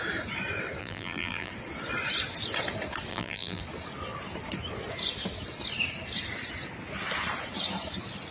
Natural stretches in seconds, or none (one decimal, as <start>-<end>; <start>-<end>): 0.0-0.8; 1.5-3.1; 3.6-8.3